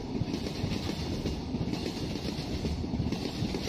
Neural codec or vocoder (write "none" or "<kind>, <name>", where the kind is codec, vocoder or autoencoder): none